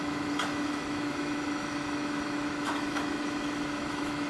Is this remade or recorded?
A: remade